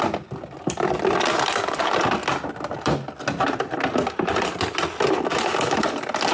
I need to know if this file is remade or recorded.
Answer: recorded